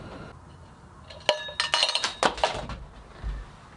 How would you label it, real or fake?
real